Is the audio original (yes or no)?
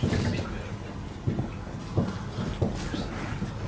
yes